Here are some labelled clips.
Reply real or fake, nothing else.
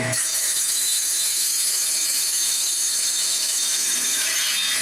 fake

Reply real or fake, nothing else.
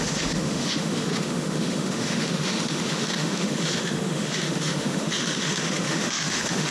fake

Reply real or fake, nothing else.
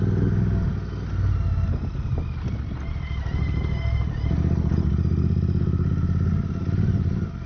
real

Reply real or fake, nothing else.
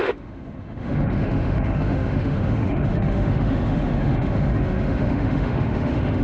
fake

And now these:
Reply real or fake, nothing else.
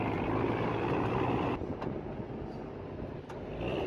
real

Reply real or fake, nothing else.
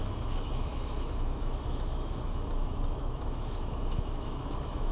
fake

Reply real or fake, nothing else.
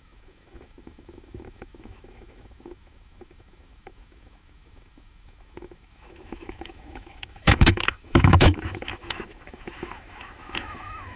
fake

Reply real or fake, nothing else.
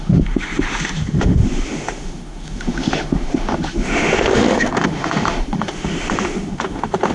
fake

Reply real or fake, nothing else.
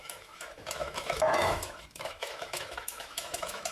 fake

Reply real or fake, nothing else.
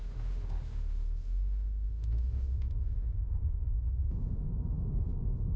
fake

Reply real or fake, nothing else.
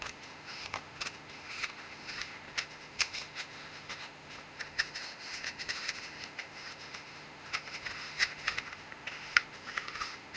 fake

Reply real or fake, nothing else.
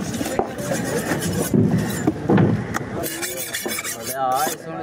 real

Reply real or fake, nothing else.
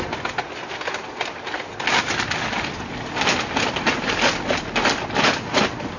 real